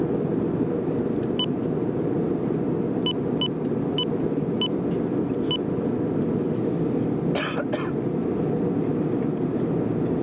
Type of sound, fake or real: real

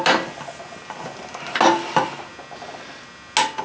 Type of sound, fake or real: real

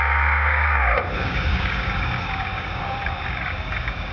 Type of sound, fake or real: fake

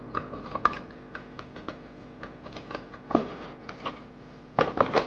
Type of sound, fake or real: real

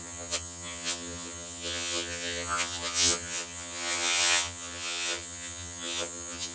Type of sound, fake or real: fake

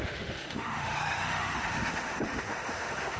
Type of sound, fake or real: fake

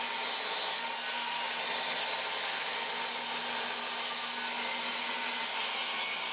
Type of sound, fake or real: real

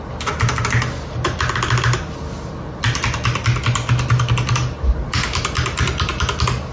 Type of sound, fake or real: real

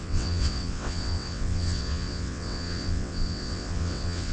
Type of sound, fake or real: fake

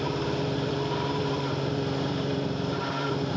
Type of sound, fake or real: fake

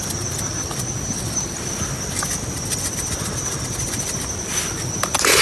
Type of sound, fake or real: real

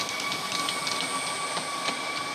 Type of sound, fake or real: real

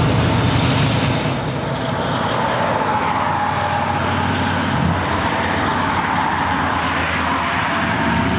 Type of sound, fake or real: real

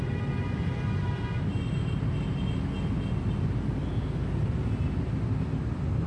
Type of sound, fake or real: real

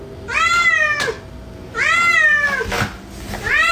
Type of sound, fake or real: real